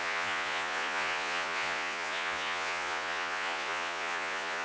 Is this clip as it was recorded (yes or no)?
no